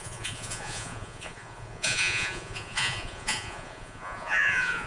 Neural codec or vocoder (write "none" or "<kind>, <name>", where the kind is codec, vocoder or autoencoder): vocoder, Vocos